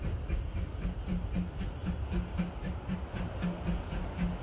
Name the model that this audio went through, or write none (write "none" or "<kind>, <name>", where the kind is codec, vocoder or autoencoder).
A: none